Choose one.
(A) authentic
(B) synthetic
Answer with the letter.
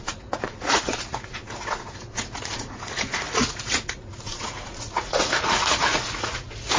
B